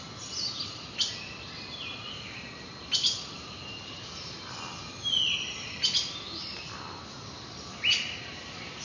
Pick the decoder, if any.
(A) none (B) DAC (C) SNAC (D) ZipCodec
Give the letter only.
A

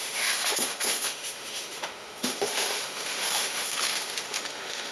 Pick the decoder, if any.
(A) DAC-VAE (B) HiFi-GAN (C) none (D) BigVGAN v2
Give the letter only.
A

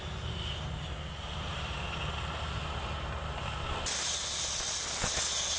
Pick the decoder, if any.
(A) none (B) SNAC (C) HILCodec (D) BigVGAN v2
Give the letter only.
A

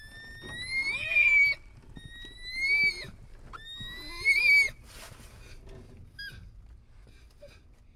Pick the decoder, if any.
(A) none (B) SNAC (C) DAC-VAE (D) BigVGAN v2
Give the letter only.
A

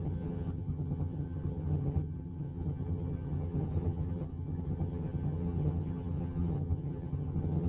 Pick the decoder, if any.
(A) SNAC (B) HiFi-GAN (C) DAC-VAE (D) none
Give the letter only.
B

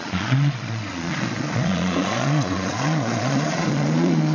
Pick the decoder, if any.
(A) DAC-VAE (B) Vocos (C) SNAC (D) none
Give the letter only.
B